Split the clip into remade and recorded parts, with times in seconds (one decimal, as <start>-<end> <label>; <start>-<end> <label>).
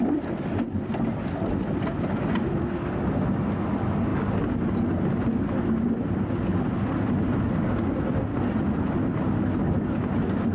0.0-10.5 recorded